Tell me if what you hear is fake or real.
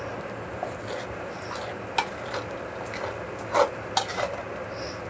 real